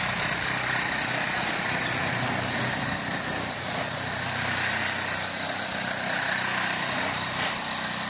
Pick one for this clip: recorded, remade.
recorded